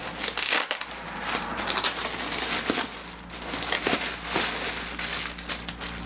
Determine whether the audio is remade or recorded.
recorded